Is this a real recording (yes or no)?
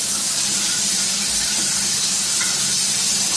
yes